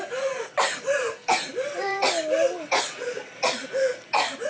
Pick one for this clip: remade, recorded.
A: remade